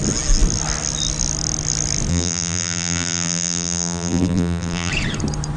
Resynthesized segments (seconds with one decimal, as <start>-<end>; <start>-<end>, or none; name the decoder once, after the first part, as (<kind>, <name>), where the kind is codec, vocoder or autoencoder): 2.1-4.9 (vocoder, BigVGAN v2)